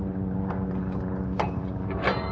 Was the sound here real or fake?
fake